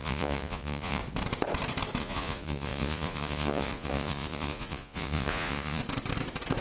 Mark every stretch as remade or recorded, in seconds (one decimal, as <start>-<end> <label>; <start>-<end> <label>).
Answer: 0.0-1.0 remade; 1.0-2.0 recorded; 2.0-5.8 remade; 5.8-6.6 recorded